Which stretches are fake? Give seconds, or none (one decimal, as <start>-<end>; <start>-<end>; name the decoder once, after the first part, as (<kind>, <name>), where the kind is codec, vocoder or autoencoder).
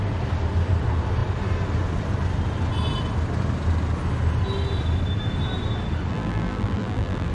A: 6.1-7.3 (vocoder, BigVGAN v2)